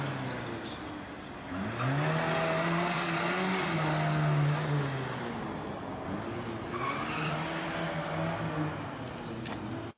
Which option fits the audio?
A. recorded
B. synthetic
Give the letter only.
A